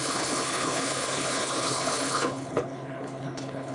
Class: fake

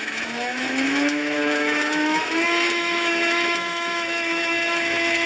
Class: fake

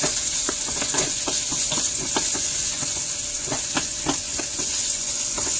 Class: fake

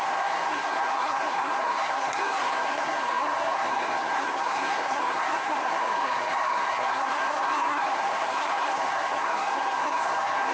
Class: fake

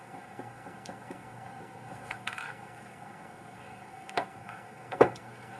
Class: fake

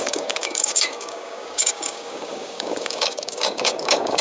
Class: fake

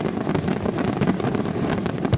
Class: real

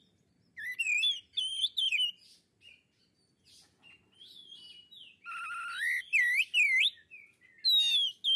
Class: real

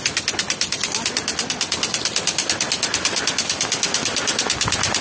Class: real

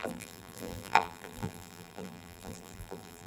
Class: fake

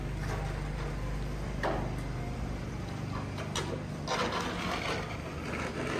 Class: real